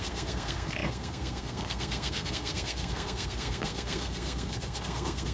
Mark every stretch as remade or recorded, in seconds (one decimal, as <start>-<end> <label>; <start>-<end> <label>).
0.0-5.3 remade